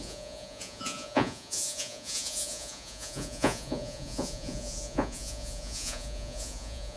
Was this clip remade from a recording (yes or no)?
yes